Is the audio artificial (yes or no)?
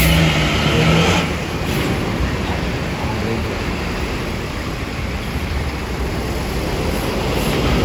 no